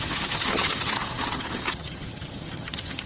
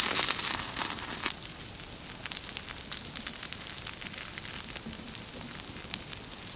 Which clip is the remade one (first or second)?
first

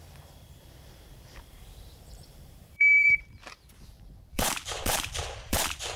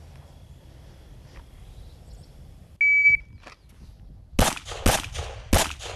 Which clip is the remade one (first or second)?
first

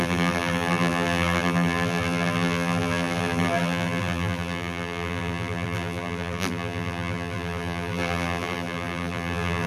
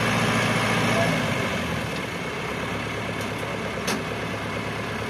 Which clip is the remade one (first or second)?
first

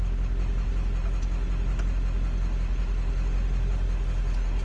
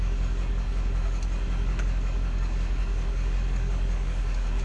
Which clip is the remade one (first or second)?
second